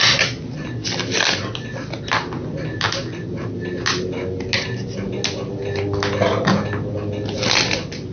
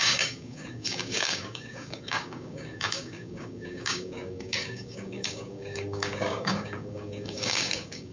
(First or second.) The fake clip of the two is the second